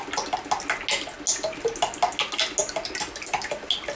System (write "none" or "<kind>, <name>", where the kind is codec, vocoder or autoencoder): none